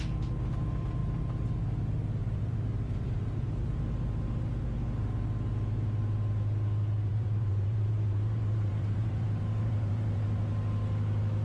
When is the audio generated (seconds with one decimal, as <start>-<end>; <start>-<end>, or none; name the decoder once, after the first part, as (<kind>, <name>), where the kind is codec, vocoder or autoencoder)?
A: 2.2-3.8 (vocoder, BigVGAN v2); 7.1-10.2